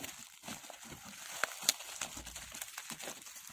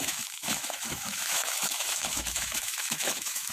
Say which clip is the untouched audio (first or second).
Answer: first